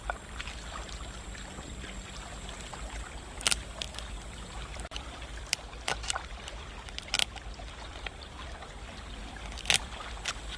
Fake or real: fake